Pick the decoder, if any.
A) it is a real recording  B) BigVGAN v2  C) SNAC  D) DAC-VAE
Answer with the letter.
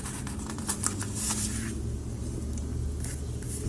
A